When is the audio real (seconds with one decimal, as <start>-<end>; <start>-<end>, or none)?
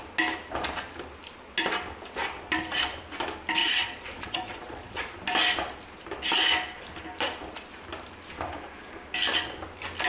0.0-3.6; 5.2-10.1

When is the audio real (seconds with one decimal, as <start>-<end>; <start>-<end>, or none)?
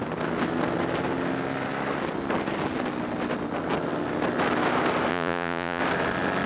0.0-5.1; 5.8-6.5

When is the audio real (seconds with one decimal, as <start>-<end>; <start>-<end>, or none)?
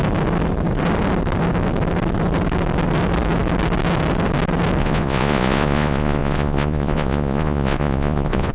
0.0-4.8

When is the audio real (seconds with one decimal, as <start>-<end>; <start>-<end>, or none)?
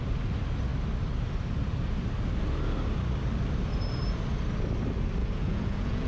0.0-5.2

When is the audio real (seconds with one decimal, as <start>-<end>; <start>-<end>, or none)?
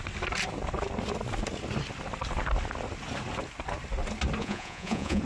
0.0-4.4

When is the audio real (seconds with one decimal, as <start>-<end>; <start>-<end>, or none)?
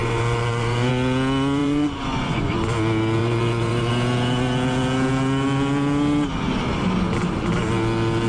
0.9-1.6; 2.6-3.2; 3.9-8.3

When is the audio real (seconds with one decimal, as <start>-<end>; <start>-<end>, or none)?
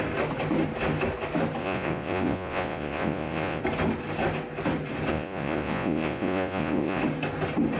0.0-1.6; 3.6-5.1; 7.0-7.8